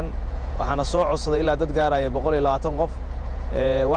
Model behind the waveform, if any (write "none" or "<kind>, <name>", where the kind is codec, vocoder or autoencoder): vocoder, Vocos